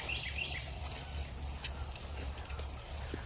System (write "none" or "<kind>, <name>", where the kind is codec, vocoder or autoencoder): none